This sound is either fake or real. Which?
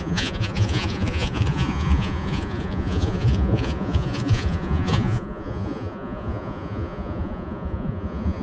fake